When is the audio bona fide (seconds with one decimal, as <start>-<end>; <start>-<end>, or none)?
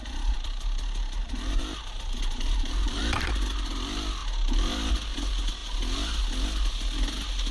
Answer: 0.0-1.2; 3.0-7.5